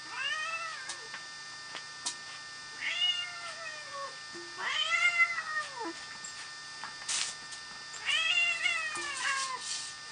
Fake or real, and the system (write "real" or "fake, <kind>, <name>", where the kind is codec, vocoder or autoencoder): real